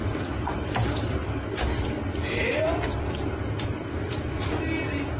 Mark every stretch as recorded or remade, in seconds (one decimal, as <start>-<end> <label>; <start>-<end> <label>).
0.0-1.1 remade; 1.1-5.2 recorded

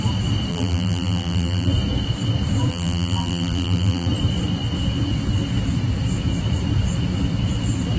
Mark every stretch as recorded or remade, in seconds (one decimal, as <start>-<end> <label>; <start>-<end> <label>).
0.0-0.5 recorded; 0.5-1.7 remade; 1.7-2.7 recorded; 2.7-4.1 remade; 4.1-8.0 recorded

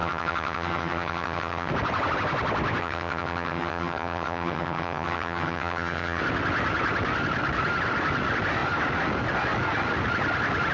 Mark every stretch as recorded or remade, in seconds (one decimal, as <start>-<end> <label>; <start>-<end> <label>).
0.0-1.7 remade; 1.7-2.8 recorded; 2.8-6.2 remade; 6.2-10.7 recorded